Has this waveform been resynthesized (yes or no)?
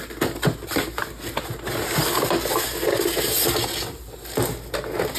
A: no